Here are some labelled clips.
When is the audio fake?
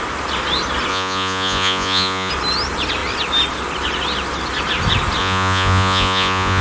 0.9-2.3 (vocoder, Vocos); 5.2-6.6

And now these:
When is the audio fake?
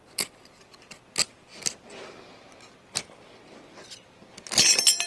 none